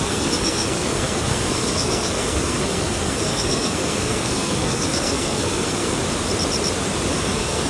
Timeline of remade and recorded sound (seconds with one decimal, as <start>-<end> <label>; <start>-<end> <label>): 0.0-6.0 remade; 6.0-7.1 recorded; 7.1-7.7 remade